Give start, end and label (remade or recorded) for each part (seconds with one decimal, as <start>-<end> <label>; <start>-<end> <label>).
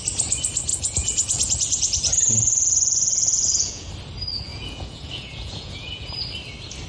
0.0-0.7 recorded; 0.7-3.9 remade; 3.9-4.5 recorded; 4.5-6.2 remade; 6.2-6.9 recorded